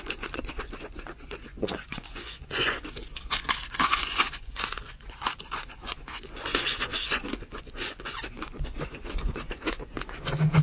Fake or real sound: fake